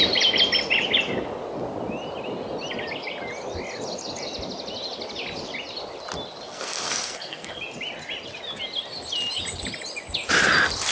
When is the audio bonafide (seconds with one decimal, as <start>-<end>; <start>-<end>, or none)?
0.0-6.5; 7.6-10.9